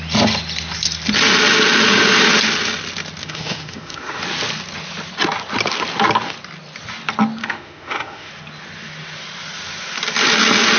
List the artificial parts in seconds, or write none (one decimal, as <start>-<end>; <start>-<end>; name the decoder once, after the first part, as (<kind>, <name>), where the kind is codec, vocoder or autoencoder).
3.2-4.2 (autoencoder, DAC-VAE); 7.4-8.3